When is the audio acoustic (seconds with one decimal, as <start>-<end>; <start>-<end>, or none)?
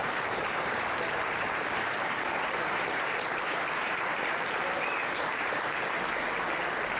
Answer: 4.2-5.0; 5.8-7.0